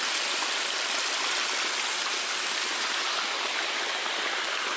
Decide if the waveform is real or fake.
real